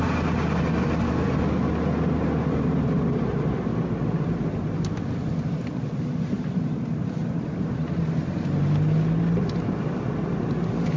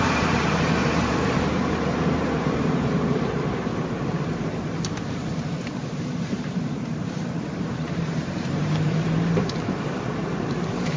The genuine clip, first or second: first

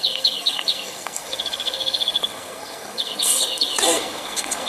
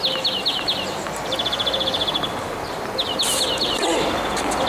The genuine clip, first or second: second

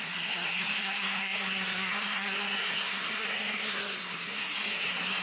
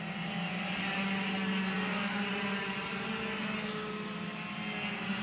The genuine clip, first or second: second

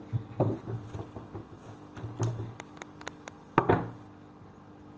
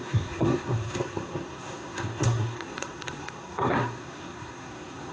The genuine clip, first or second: first